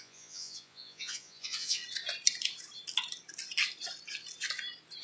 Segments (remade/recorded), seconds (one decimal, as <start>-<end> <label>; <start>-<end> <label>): 0.0-1.8 remade; 1.8-5.0 recorded